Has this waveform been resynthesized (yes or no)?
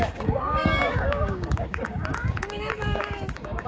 yes